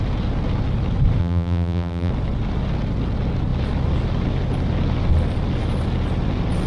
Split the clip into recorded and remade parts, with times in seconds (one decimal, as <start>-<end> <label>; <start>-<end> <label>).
0.0-1.2 recorded; 1.2-2.1 remade; 2.1-6.7 recorded